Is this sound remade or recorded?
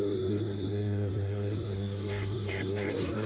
remade